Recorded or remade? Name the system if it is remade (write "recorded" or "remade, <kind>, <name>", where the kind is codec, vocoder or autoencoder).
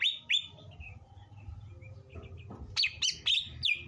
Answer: recorded